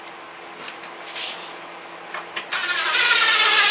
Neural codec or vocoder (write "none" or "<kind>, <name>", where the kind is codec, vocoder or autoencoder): none